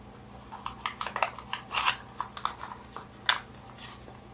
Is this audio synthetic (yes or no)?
no